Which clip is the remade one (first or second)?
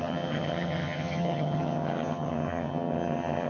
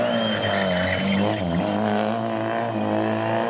first